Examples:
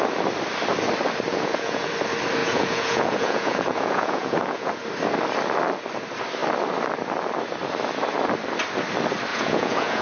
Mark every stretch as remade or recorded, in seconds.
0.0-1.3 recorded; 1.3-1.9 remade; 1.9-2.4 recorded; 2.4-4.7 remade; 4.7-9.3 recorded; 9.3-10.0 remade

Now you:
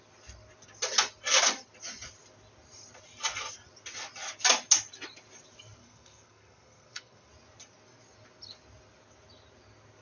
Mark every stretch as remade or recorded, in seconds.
0.0-5.8 recorded; 5.8-7.3 remade; 7.3-10.0 recorded

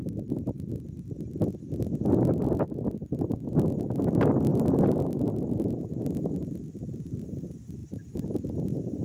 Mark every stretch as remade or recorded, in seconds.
0.0-0.7 remade; 0.7-4.5 recorded; 4.5-5.9 remade; 5.9-9.0 recorded